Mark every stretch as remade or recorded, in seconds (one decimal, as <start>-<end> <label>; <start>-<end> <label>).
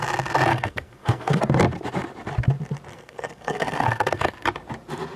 0.0-0.5 recorded; 0.5-1.4 remade; 1.4-2.9 recorded; 2.9-4.3 remade; 4.3-5.2 recorded